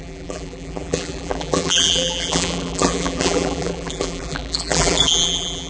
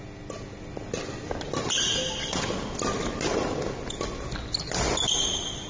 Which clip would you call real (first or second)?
second